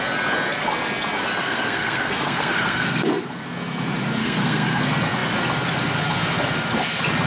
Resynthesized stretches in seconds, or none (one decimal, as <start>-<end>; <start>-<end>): 1.4-3.3; 4.2-4.8